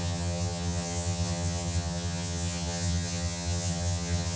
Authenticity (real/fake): fake